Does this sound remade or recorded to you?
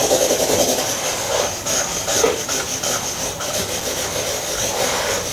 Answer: remade